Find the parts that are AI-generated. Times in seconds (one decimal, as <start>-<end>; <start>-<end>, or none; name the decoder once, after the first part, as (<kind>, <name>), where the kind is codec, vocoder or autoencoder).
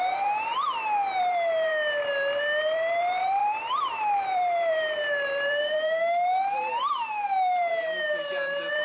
0.0-0.5 (vocoder, BigVGAN v2); 1.2-1.7; 2.4-8.8